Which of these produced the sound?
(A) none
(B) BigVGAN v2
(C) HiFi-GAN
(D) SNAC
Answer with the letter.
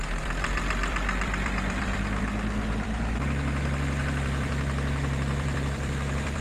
B